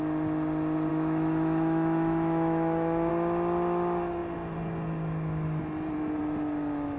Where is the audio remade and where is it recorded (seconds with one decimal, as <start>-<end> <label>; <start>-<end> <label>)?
0.0-0.9 recorded; 0.9-3.1 remade; 3.1-7.0 recorded